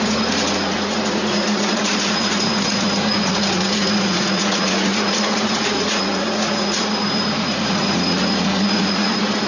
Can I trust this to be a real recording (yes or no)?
no